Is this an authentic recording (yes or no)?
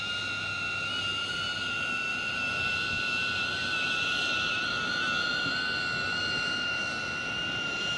yes